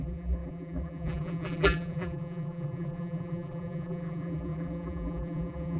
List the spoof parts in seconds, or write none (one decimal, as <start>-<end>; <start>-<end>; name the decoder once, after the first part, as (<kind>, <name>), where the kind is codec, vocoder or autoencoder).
0.0-5.8 (vocoder, BigVGAN v2)